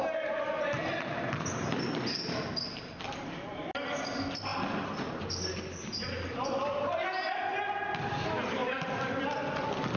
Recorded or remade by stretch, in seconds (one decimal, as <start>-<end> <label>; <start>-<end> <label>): 0.0-8.6 recorded; 8.6-9.2 remade; 9.2-10.0 recorded